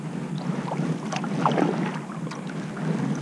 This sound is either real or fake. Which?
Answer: real